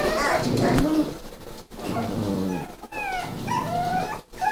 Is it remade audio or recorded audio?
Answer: recorded